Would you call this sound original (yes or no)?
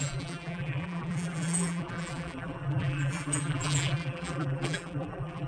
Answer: no